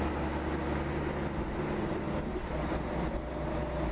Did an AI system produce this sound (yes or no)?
no